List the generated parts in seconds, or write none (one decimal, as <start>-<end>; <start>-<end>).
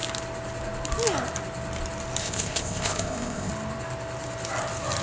2.2-3.5